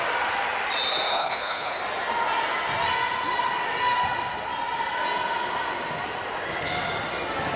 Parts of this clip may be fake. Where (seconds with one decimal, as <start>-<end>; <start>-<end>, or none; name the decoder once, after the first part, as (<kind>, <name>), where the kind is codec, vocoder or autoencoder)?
1.1-1.8 (codec, HILCodec)

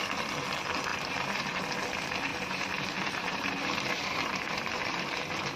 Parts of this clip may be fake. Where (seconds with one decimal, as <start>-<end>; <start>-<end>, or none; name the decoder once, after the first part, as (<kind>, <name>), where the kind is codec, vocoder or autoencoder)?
0.9-1.6 (vocoder, BigVGAN v2); 2.3-5.0

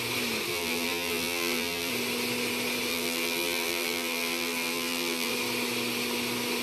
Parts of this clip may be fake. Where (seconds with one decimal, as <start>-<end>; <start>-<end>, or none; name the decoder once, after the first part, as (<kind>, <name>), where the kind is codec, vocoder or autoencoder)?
0.5-1.9 (vocoder, BigVGAN v2); 2.9-5.3